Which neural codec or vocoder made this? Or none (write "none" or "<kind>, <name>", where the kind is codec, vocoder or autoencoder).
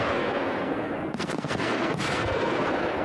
codec, SNAC